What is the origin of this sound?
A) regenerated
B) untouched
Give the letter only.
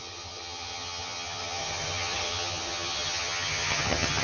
A